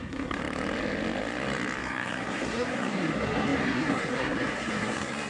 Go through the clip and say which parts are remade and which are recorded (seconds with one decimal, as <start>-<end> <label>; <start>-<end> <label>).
0.0-0.4 remade; 0.4-1.8 recorded; 1.8-5.3 remade